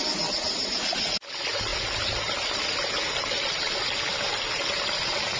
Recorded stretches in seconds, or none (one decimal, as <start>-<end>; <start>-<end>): 0.0-5.4